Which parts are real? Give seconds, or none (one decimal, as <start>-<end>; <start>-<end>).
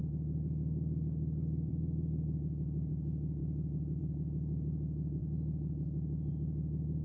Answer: 2.9-3.4; 4.0-7.0